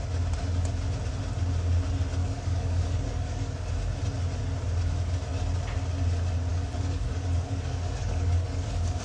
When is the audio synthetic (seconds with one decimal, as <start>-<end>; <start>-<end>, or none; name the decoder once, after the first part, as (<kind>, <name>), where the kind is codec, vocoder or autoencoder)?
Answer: 2.2-3.7 (codec, DAC); 6.5-9.0